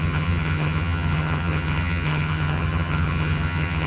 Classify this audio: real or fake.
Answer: fake